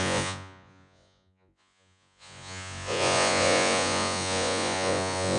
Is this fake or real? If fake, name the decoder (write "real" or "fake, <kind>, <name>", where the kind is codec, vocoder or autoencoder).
fake, vocoder, Vocos